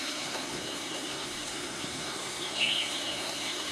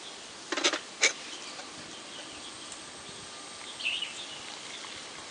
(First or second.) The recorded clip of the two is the second